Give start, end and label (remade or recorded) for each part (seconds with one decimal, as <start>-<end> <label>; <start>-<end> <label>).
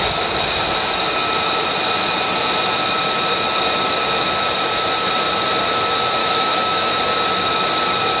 0.0-6.2 recorded; 6.2-7.0 remade; 7.0-8.2 recorded